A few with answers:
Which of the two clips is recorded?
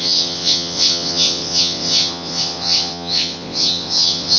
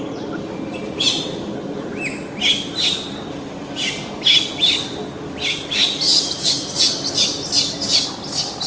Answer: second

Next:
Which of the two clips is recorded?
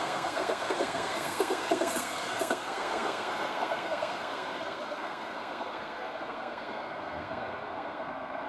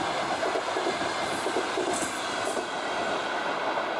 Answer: second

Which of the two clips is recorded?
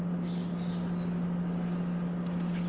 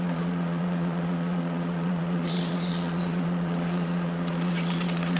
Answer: first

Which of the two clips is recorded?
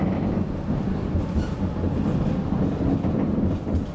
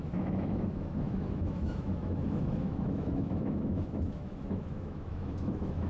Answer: first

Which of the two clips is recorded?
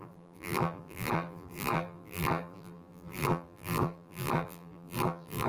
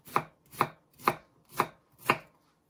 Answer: second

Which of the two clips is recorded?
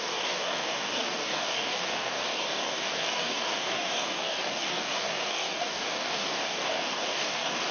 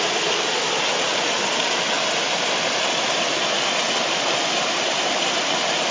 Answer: second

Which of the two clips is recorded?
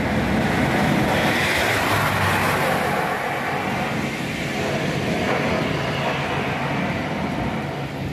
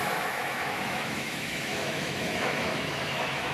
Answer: first